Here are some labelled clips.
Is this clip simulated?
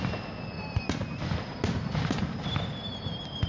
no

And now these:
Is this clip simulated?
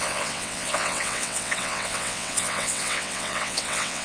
yes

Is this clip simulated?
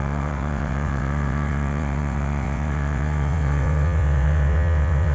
yes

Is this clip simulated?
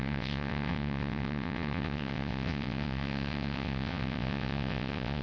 yes